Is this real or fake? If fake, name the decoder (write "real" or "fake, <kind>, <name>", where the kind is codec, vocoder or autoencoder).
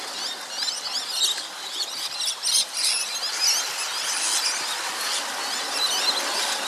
real